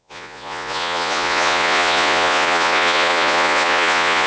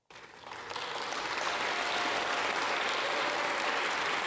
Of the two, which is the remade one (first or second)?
first